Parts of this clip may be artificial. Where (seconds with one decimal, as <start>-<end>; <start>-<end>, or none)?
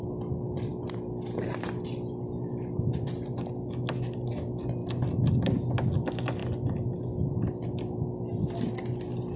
none